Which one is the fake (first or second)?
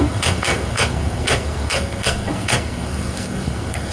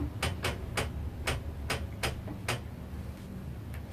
first